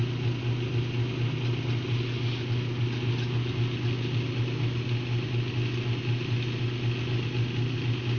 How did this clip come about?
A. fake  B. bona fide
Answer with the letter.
B